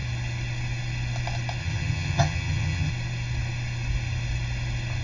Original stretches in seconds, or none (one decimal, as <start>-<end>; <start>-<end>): 0.0-1.6; 2.9-5.0